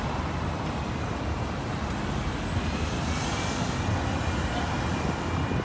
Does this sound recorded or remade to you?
recorded